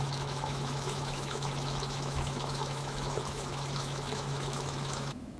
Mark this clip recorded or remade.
remade